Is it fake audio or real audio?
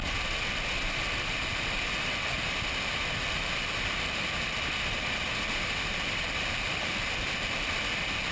fake